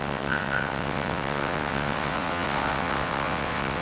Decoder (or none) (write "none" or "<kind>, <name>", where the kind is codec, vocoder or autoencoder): vocoder, WaveNeXt